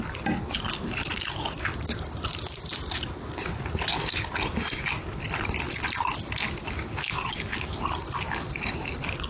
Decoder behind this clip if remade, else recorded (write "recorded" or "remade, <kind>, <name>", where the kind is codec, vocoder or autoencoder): recorded